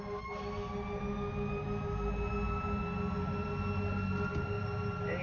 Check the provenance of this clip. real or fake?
real